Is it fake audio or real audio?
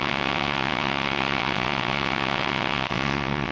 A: fake